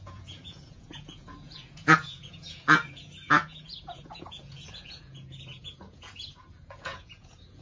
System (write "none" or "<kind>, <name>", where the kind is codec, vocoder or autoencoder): vocoder, Vocos